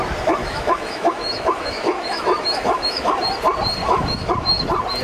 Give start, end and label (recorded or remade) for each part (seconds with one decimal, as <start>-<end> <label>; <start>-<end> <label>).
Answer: 0.0-0.4 recorded; 0.4-3.1 remade; 3.1-3.8 recorded; 3.8-4.3 remade; 4.3-5.0 recorded